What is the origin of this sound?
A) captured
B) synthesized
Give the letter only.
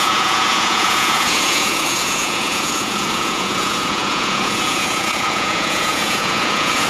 B